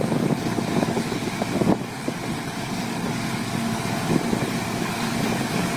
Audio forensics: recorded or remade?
remade